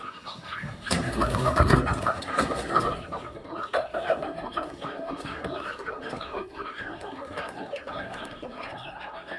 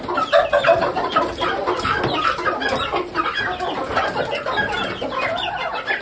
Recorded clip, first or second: second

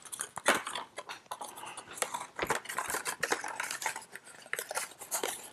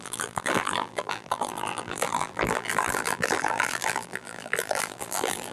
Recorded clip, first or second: first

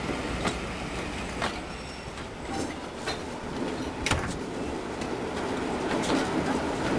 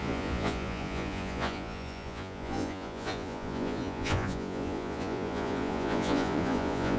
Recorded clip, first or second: first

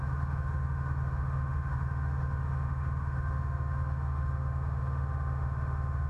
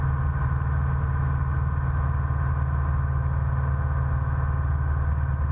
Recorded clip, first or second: second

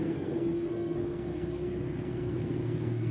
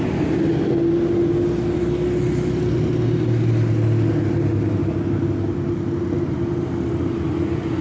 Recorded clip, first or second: second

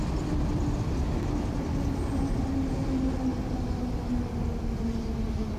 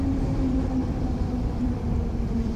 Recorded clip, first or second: first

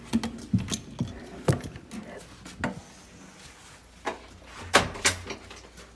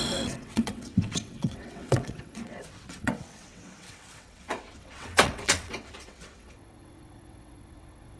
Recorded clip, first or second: first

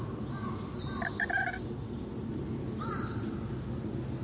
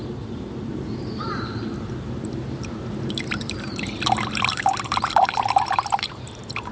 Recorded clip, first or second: first